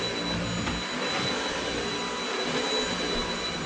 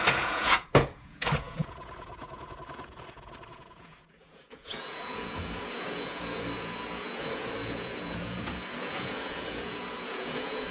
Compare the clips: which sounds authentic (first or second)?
first